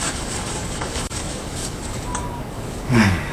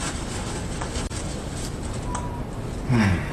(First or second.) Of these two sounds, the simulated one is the first